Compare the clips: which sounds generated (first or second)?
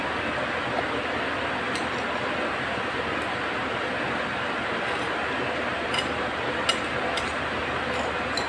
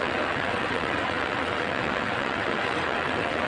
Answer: second